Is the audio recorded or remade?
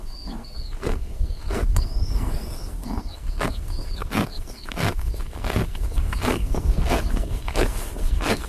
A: remade